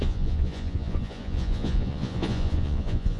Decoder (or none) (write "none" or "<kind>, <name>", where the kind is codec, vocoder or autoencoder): vocoder, Vocos